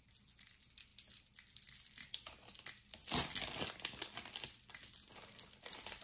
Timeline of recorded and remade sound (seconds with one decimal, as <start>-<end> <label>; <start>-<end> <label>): 0.0-6.0 recorded